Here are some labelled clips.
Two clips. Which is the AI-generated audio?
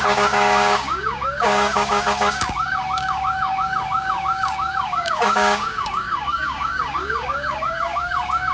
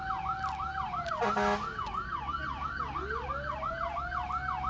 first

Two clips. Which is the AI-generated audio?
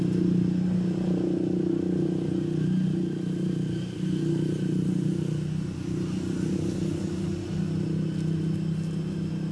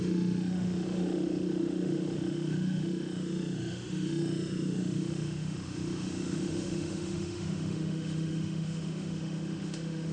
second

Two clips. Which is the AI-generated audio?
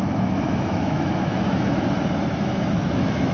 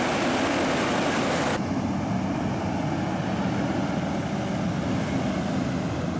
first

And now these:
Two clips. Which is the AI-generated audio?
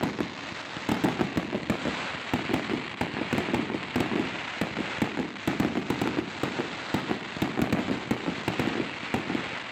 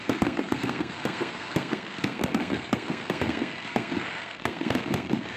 second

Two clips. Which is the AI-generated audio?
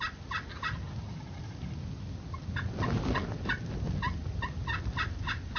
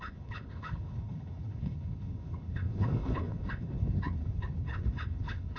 second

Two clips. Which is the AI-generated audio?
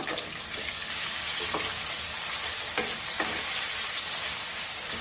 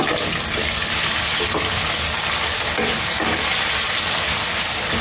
first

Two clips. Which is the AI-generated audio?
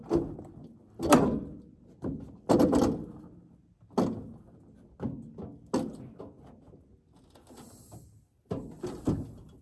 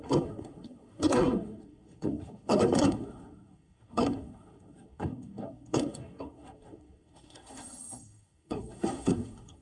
second